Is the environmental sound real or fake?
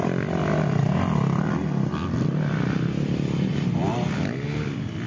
real